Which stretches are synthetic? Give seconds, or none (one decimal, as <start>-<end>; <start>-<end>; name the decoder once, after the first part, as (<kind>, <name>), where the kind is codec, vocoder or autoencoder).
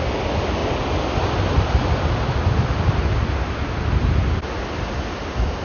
none